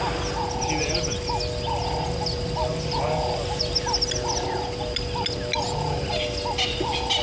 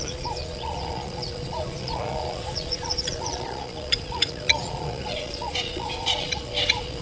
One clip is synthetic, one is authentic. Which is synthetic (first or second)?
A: second